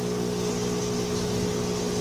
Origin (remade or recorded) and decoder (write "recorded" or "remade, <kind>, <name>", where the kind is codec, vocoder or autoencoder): recorded